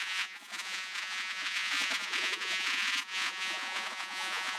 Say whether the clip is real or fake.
fake